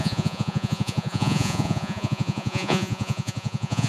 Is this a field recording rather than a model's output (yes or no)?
no